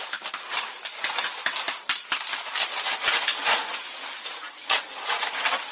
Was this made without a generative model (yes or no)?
yes